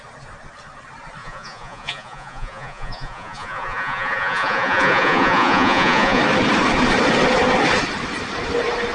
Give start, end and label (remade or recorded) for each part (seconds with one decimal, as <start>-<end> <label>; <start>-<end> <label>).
0.0-1.2 recorded; 1.2-6.2 remade; 6.2-8.9 recorded

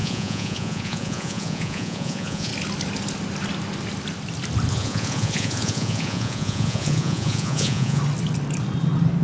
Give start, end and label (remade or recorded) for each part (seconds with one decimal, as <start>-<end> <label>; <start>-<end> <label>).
0.0-2.5 remade; 2.5-4.7 recorded; 4.7-8.0 remade; 8.0-9.2 recorded

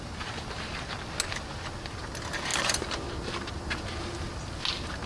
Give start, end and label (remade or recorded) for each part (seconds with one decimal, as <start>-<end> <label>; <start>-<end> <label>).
0.0-5.1 recorded

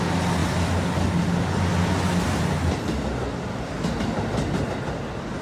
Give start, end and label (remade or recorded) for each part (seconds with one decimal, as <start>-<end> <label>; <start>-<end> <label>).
0.0-5.4 recorded

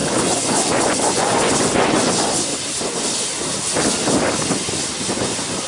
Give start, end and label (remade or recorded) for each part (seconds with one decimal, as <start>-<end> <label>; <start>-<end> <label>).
0.0-2.5 remade; 2.5-5.1 recorded; 5.1-5.7 remade

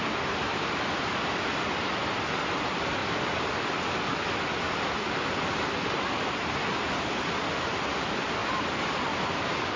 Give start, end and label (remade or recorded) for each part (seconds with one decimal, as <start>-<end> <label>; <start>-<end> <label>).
0.0-9.8 recorded

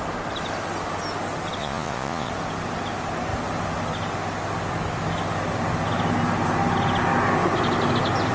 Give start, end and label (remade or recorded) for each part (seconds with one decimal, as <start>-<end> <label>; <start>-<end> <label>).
0.0-1.6 recorded; 1.6-2.3 remade; 2.3-8.3 recorded

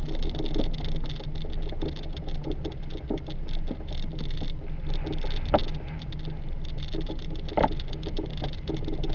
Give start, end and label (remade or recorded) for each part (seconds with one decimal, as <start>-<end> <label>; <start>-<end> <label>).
0.0-9.1 recorded